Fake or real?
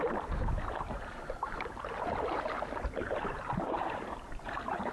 fake